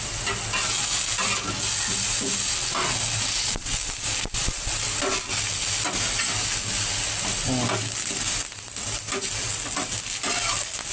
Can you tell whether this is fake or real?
real